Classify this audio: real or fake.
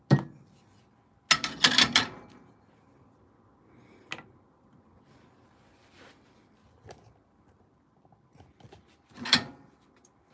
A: real